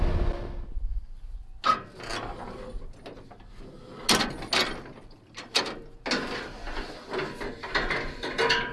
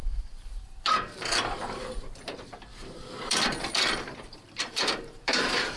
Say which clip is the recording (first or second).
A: first